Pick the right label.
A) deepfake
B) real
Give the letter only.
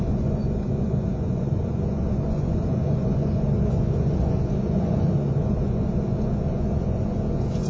A